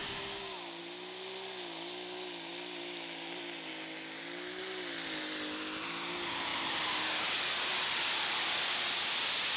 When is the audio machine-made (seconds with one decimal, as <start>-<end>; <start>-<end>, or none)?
2.5-3.7; 6.5-7.3

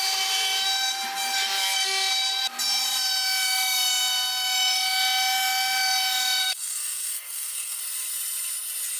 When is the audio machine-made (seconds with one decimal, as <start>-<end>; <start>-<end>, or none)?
6.4-7.8

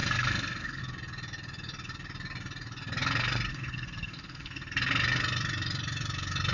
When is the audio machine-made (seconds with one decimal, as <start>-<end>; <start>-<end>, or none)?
0.0-0.8; 3.5-4.7

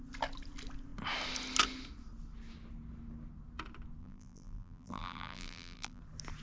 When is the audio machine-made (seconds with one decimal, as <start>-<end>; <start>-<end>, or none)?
4.0-6.0

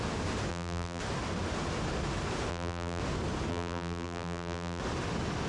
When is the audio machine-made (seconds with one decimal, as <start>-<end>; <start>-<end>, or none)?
0.5-1.0; 2.5-3.0; 3.5-4.8